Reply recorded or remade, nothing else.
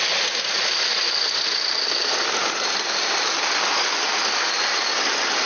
recorded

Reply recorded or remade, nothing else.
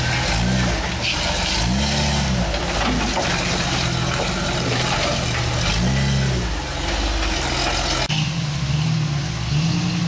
recorded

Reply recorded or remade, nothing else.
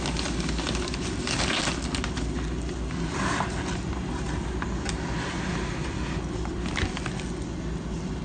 recorded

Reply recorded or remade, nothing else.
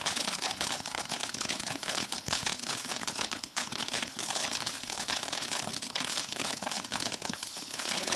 remade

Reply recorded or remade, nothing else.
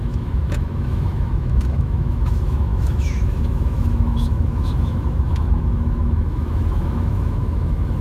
remade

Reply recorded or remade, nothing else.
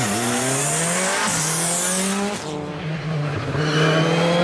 recorded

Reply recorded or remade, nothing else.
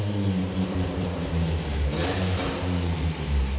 remade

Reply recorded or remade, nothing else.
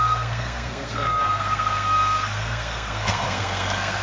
remade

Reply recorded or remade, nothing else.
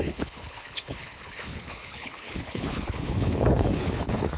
remade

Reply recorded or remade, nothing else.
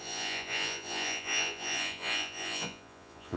remade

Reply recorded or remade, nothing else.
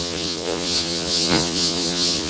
remade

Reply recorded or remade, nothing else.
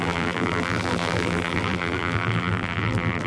remade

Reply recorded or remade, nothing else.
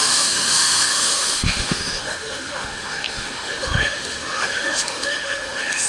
remade